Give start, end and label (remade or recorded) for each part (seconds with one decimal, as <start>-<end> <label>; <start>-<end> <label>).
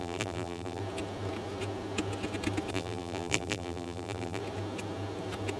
0.0-0.8 remade; 0.8-2.7 recorded; 2.7-4.4 remade; 4.4-5.6 recorded